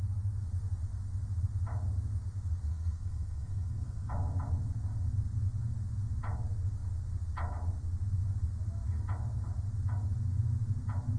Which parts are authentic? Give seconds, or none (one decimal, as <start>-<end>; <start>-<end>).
0.0-2.7; 4.1-11.2